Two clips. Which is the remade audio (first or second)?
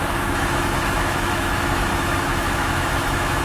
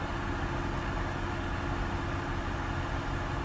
first